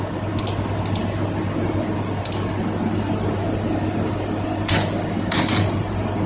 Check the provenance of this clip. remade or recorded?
recorded